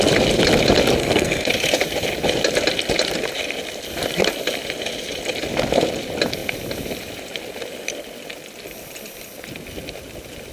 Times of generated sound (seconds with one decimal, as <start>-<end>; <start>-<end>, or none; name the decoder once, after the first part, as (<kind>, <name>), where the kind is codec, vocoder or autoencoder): 1.0-1.5 (codec, SNAC)